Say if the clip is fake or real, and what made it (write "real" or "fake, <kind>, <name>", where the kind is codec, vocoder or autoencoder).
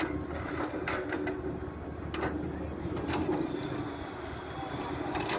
real